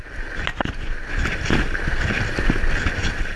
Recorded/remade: recorded